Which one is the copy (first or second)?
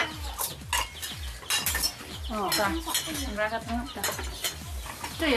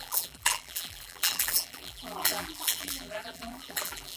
second